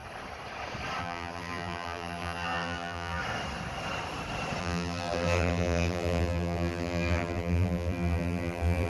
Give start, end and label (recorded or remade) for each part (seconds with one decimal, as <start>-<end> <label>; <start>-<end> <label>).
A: 0.0-1.0 recorded; 1.0-3.2 remade; 3.2-4.6 recorded; 4.6-8.9 remade